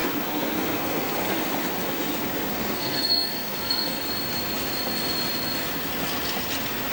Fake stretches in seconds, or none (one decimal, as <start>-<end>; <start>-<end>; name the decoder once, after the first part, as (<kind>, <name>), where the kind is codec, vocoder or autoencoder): 0.0-1.4 (codec, SNAC); 2.5-4.0

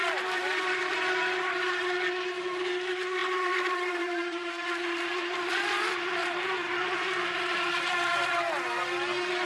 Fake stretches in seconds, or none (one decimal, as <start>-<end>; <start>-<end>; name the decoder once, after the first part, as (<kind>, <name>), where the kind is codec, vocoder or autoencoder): 0.0-0.9 (vocoder, BigVGAN v2); 3.2-8.3

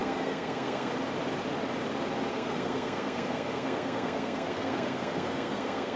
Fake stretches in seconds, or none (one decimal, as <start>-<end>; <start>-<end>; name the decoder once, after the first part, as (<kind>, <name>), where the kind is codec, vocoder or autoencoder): 0.0-0.9 (codec, SNAC); 2.3-6.0

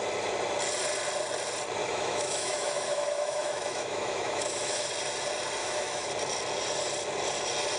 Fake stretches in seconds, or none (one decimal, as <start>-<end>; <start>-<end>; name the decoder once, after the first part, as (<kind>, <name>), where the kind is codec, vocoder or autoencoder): 1.8-4.9 (autoencoder, DAC-VAE); 5.6-6.1

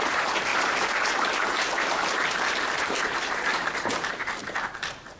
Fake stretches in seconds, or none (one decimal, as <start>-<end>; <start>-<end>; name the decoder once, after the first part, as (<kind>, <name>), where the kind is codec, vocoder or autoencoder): 0.0-5.2 (vocoder, BigVGAN v2)

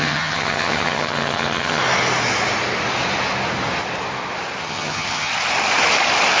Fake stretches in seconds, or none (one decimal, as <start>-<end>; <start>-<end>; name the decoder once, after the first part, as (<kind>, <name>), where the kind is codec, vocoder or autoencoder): 0.0-1.8 (vocoder, HiFi-GAN); 4.6-5.3